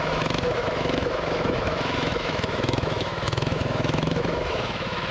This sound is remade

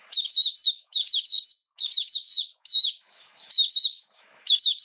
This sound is remade